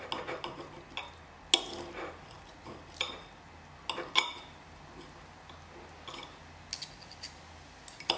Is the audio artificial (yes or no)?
no